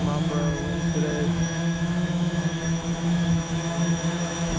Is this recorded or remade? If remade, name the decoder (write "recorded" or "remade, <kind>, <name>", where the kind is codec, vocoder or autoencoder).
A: remade, autoencoder, DAC-VAE